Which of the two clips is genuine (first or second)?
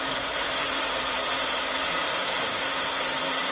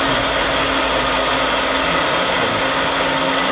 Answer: second